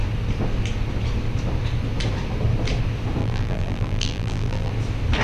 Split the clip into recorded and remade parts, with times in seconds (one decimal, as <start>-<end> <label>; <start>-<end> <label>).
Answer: 0.0-3.2 recorded; 3.2-4.7 remade; 4.7-5.2 recorded